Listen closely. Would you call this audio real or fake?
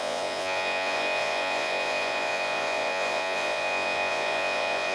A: fake